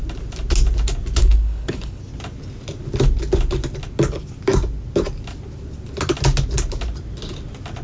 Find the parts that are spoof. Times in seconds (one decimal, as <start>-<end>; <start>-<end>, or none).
1.2-2.0